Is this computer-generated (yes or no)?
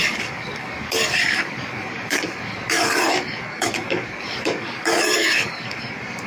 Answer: yes